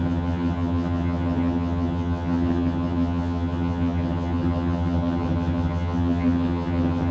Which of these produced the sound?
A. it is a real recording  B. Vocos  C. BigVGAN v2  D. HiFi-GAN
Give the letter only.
D